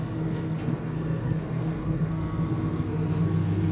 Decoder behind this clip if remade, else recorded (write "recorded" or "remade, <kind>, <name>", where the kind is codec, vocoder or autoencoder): remade, codec, SNAC